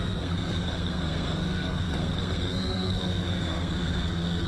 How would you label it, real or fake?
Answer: fake